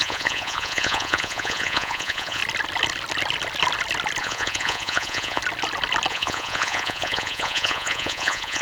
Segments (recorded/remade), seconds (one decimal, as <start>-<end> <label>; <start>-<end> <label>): 0.0-2.4 remade; 2.4-4.2 recorded; 4.2-5.4 remade; 5.4-6.1 recorded; 6.1-8.6 remade